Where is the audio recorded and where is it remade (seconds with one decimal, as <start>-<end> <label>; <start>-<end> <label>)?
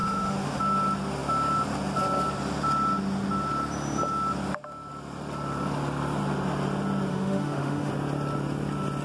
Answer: 0.0-0.6 remade; 0.6-7.1 recorded; 7.1-7.9 remade; 7.9-9.0 recorded